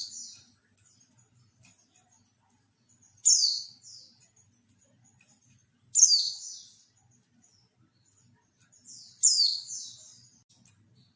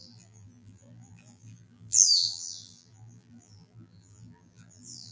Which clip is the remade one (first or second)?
second